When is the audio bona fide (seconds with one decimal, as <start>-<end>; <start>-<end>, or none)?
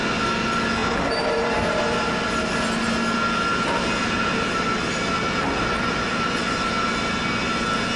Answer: 0.0-0.8; 2.1-8.0